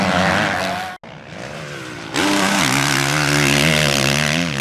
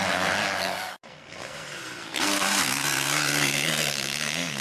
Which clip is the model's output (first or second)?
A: second